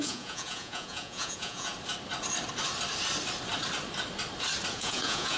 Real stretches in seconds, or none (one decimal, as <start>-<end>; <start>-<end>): 1.7-4.7